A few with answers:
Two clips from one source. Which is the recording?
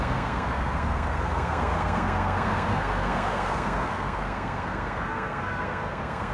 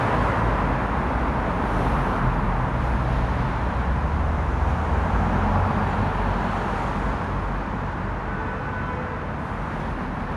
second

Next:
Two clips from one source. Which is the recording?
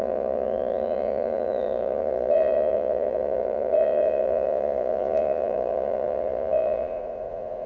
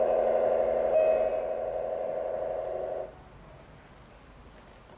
second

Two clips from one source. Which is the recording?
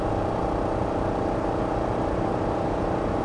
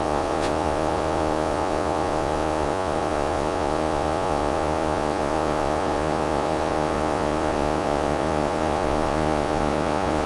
first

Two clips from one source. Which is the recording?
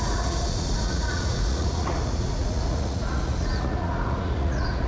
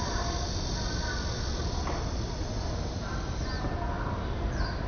second